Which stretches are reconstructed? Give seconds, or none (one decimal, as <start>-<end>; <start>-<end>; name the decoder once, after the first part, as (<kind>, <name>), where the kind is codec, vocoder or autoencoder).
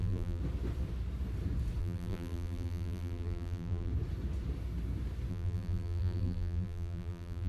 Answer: 0.0-0.4 (vocoder, BigVGAN v2); 1.8-3.9; 5.3-7.5